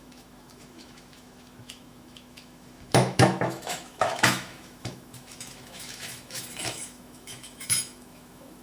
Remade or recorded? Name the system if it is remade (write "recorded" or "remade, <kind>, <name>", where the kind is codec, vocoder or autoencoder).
remade, autoencoder, DAC-VAE